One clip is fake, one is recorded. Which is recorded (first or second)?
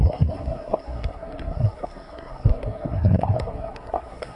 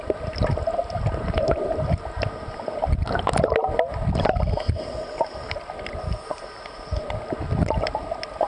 second